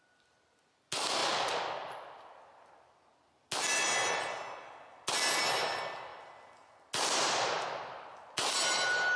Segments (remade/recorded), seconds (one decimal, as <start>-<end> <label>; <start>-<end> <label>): 0.0-9.2 recorded